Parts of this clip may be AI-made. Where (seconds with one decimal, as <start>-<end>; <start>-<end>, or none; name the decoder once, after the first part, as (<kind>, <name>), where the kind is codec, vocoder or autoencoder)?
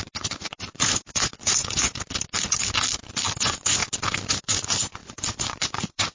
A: 0.0-1.9 (vocoder, Vocos); 3.4-3.8; 4.3-6.1